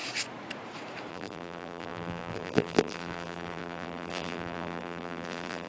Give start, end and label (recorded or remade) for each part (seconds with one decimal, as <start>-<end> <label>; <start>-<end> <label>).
0.0-1.1 recorded; 1.1-5.7 remade

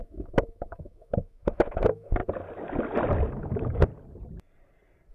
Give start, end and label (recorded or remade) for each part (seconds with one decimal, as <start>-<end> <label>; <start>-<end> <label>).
0.0-2.2 remade; 2.2-3.3 recorded; 3.3-3.9 remade; 3.9-5.1 recorded